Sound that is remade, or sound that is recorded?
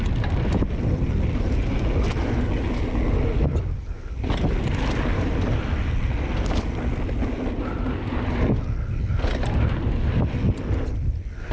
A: recorded